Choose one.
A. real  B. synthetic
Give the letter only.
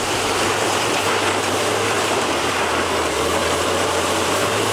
B